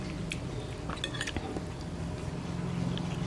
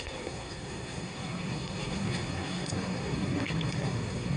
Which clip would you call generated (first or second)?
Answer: second